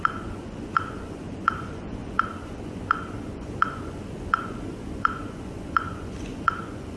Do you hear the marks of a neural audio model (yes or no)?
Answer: yes